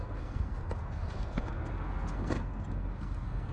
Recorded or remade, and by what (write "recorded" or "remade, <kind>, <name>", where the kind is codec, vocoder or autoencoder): remade, codec, SNAC